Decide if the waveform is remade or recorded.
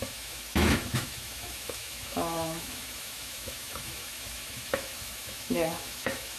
remade